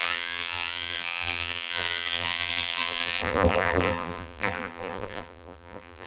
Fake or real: fake